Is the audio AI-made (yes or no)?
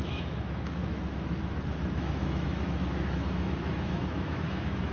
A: yes